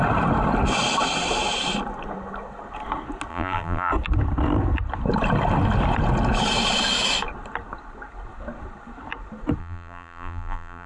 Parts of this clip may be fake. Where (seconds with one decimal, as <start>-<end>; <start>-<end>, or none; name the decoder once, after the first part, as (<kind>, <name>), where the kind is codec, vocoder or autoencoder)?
3.3-3.9 (vocoder, BigVGAN v2); 9.6-10.9